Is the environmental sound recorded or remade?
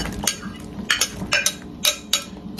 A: recorded